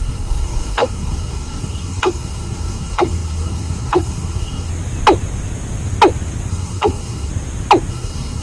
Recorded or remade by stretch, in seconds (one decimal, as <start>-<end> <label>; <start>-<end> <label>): 0.0-4.7 remade; 4.7-6.5 recorded; 6.5-7.3 remade; 7.3-7.9 recorded; 7.9-8.4 remade